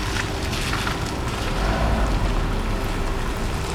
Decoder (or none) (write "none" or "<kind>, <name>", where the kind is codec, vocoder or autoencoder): none